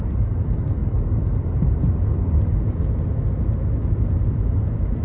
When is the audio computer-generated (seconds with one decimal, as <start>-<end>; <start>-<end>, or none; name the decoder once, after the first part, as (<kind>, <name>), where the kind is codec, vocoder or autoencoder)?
none